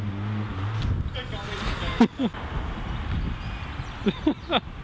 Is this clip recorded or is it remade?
recorded